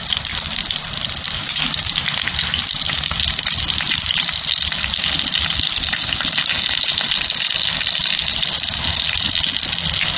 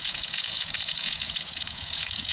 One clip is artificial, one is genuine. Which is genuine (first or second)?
first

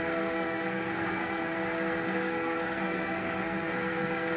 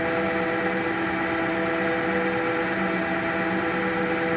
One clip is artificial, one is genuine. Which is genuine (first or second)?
second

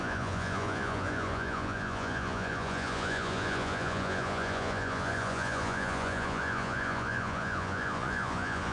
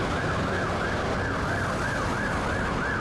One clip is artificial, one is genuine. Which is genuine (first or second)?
second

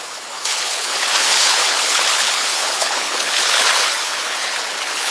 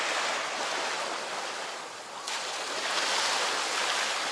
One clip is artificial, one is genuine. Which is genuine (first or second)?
second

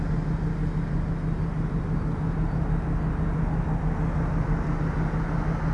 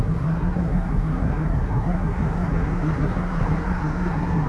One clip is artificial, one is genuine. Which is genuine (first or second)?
first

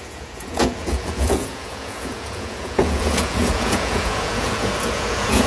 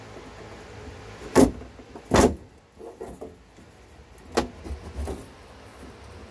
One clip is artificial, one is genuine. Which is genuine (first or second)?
second